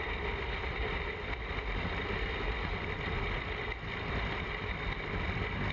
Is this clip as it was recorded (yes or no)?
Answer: yes